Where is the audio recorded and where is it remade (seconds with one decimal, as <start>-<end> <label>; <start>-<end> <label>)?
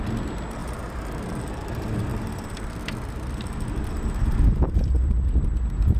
0.0-0.6 recorded; 0.6-1.2 remade; 1.2-6.0 recorded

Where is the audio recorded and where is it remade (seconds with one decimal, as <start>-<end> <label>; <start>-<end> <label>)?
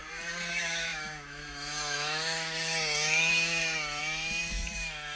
0.0-0.5 recorded; 0.5-5.2 remade